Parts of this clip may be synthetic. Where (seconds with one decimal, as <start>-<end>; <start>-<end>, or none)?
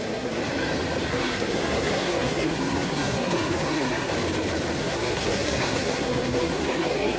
0.0-0.4; 1.1-4.1; 4.8-7.2